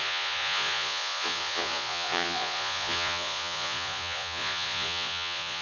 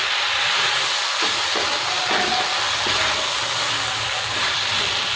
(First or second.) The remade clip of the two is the first